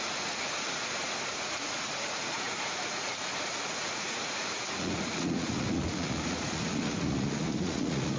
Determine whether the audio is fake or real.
fake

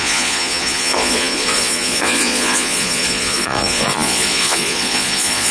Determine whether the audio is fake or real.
fake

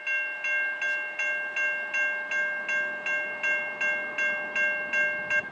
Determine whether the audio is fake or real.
real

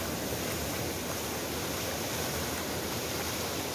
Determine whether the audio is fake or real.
real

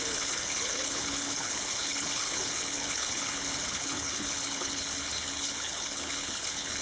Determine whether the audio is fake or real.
fake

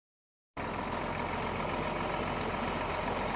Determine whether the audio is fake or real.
real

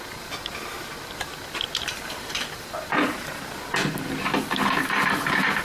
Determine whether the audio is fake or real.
fake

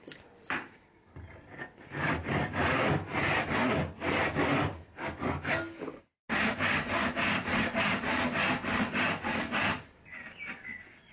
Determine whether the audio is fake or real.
real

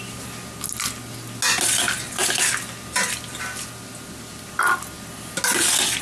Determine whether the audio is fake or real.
real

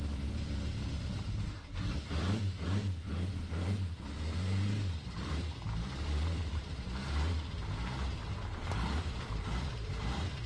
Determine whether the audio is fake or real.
fake